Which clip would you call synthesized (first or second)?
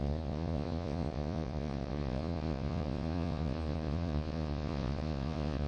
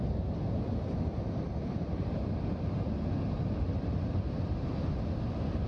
first